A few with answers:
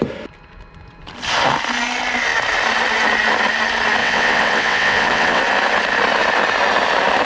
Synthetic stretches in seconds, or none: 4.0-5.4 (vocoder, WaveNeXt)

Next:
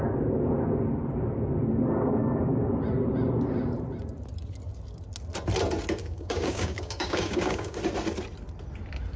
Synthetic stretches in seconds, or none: 2.2-2.8 (codec, DAC); 6.0-7.8